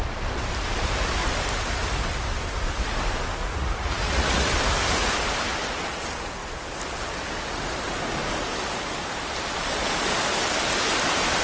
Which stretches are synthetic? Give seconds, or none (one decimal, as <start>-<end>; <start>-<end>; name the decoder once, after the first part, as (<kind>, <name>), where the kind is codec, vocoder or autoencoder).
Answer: 3.4-4.5 (vocoder, Vocos)